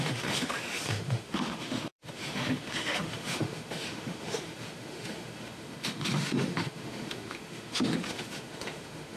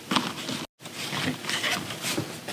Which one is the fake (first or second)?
first